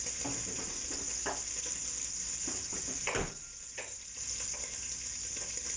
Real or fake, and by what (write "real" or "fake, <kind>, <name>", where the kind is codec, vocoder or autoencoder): real